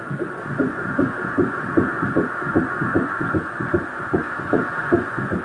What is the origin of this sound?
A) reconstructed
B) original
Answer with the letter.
A